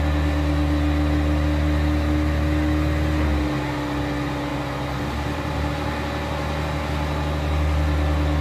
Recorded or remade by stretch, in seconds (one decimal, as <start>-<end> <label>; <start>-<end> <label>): 0.0-4.5 recorded; 4.5-5.7 remade; 5.7-8.4 recorded